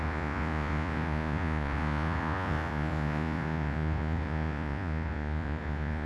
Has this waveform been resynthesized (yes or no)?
yes